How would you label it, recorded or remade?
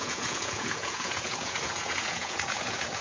remade